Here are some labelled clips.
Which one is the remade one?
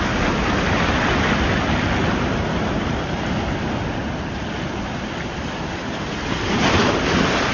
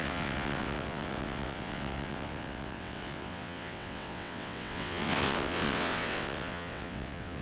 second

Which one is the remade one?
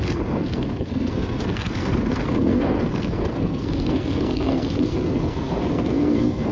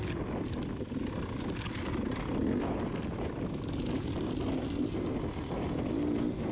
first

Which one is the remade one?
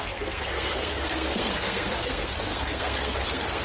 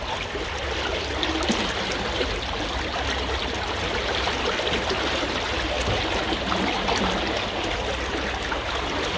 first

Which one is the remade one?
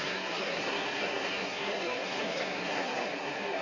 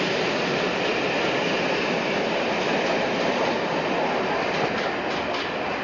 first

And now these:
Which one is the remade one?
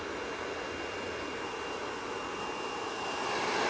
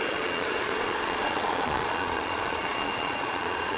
second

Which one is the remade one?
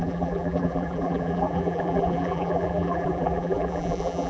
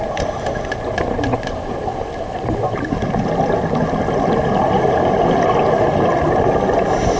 first